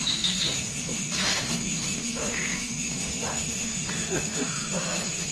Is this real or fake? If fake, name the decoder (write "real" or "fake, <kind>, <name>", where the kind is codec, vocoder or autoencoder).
fake, autoencoder, DAC-VAE